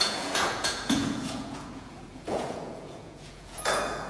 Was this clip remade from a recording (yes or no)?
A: yes